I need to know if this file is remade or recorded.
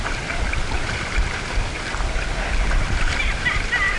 recorded